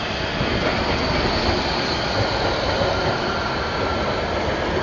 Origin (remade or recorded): recorded